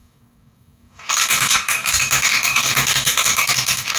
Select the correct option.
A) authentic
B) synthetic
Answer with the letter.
B